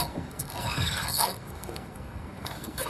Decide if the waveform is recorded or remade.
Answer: remade